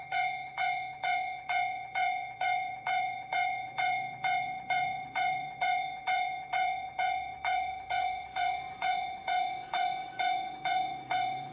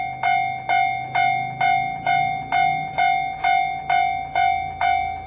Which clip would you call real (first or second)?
second